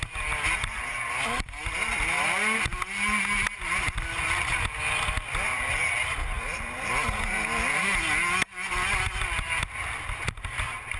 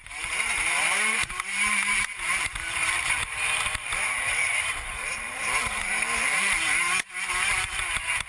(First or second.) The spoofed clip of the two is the second